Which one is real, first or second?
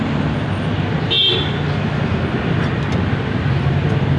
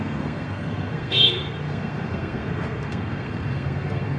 first